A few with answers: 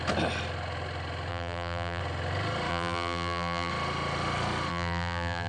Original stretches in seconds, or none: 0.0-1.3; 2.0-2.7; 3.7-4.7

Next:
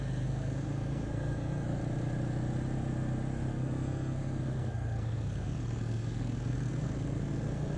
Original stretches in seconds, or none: 1.8-3.5

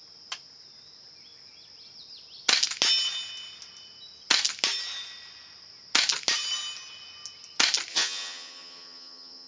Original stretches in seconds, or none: 0.0-7.9

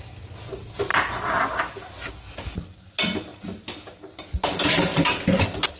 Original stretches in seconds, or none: 0.0-5.8

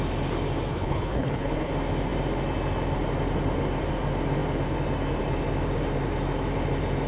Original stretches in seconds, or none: 0.0-0.7; 1.7-7.1

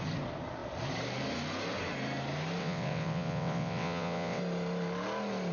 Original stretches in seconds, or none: 0.0-2.6; 4.4-5.5

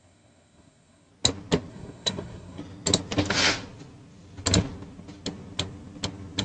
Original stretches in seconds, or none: 1.1-1.7; 2.6-6.4

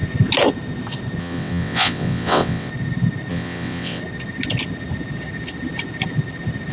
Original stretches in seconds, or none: 0.0-1.2; 2.7-3.3; 4.0-6.7